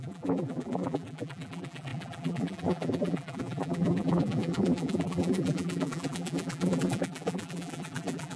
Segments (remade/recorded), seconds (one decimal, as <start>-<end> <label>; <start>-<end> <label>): 0.0-8.4 remade